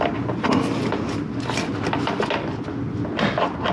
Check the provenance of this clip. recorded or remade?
recorded